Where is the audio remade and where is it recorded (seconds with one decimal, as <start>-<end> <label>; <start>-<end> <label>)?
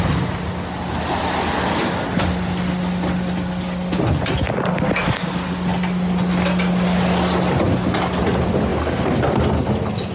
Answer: 0.0-10.1 recorded